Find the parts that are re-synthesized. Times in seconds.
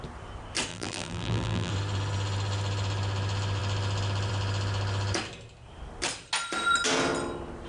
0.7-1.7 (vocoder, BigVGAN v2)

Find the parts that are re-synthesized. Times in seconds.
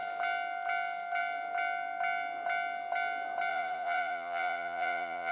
3.5-5.3 (vocoder, Vocos)